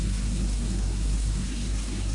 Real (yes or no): no